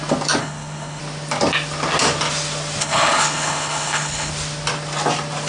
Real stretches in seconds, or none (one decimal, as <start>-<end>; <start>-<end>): 0.0-0.4; 1.0-2.8; 4.3-5.5